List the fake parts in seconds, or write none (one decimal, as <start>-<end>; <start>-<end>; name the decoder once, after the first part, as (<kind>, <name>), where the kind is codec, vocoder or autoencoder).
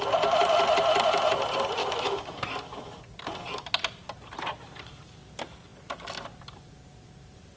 1.8-2.4 (autoencoder, DAC-VAE)